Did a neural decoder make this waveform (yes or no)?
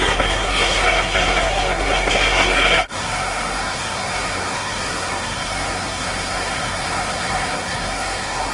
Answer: yes